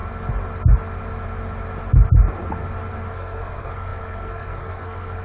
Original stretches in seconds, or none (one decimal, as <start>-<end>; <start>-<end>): 0.0-3.1